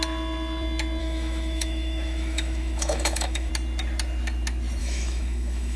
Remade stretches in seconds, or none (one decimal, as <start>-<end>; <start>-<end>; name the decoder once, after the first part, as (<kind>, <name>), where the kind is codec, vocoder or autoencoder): 1.0-3.5 (autoencoder, DAC-VAE); 4.8-5.8